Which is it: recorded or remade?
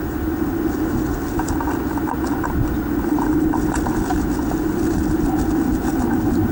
recorded